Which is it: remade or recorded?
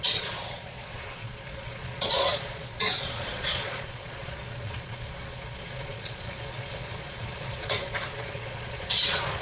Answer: remade